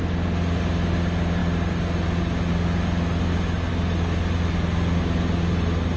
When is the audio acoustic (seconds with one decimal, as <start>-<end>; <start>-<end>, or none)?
0.0-6.0